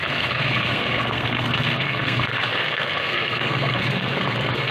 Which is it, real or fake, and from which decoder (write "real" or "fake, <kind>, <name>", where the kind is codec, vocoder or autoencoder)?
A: fake, codec, SNAC